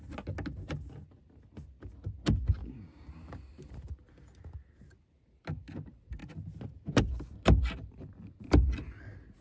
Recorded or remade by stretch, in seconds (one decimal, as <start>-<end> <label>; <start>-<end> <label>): 0.0-2.6 recorded; 2.6-3.1 remade; 3.1-9.4 recorded